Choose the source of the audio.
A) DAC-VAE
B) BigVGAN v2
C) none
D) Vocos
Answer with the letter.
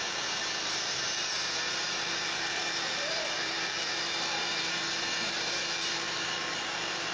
B